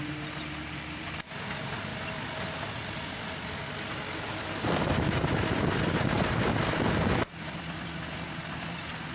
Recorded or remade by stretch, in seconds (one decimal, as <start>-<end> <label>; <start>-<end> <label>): 0.0-9.1 recorded